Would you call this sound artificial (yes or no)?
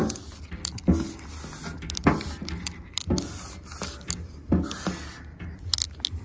no